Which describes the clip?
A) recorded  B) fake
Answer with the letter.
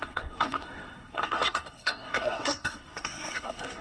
B